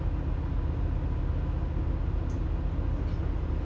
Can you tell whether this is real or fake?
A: real